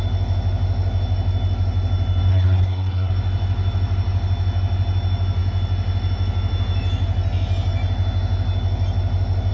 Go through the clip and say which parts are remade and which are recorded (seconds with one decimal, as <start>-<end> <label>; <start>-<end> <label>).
0.0-2.3 recorded; 2.3-3.1 remade; 3.1-9.5 recorded